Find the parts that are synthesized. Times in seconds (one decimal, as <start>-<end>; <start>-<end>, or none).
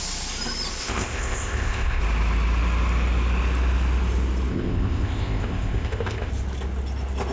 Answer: 0.8-2.0; 4.5-6.3